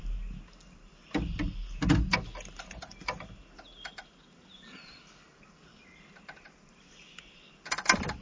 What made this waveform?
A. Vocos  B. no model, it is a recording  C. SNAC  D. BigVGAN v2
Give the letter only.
B